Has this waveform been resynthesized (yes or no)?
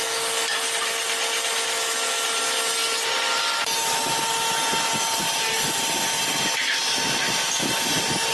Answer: no